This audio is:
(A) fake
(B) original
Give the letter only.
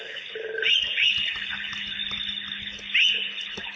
B